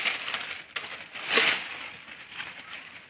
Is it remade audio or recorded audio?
recorded